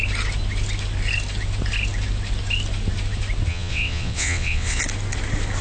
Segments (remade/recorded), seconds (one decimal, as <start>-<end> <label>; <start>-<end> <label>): 0.0-3.5 recorded; 3.5-4.8 remade; 4.8-5.6 recorded

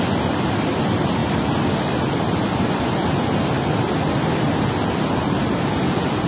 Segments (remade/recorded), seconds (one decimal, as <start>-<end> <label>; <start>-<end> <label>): 0.0-6.3 recorded